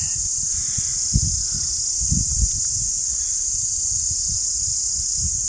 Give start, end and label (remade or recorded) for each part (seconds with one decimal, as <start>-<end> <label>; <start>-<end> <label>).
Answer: 0.0-0.9 remade; 0.9-4.2 recorded; 4.2-5.5 remade